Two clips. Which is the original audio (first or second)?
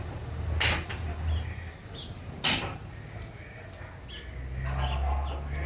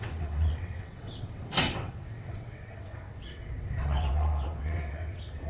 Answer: first